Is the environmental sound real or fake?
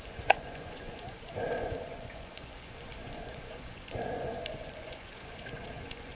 fake